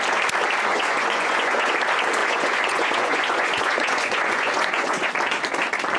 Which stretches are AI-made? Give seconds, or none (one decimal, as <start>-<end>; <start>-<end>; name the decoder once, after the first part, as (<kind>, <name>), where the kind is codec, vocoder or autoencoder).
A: 0.7-1.7 (vocoder, Vocos); 2.2-5.1